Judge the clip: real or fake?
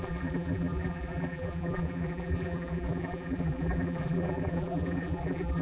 fake